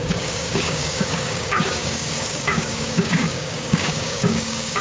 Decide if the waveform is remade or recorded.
remade